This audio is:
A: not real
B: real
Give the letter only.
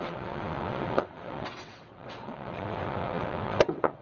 A